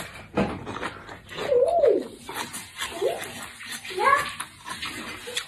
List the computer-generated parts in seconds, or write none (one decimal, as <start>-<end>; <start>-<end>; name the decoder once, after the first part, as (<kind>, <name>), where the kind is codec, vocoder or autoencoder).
none